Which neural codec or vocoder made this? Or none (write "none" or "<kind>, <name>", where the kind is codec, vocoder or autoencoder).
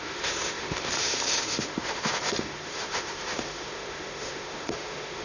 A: autoencoder, DAC-VAE